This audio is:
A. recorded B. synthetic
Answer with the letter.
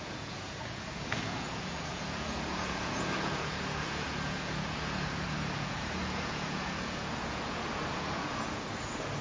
B